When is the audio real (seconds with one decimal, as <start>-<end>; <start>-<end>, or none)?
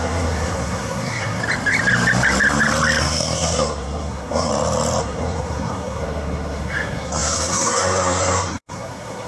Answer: 1.4-3.0; 4.5-5.0